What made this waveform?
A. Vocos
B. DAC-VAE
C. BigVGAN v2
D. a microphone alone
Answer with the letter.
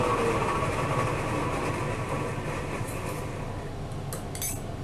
D